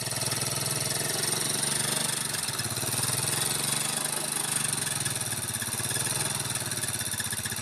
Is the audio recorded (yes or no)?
yes